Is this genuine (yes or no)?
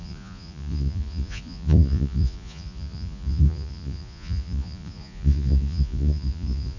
no